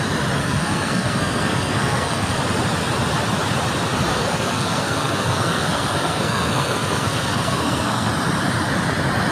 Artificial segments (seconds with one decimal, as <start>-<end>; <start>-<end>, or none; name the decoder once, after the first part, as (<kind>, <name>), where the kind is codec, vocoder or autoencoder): 0.4-2.4 (codec, SNAC); 4.1-8.1